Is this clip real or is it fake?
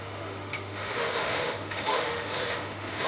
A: fake